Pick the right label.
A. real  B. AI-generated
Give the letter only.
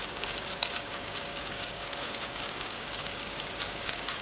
B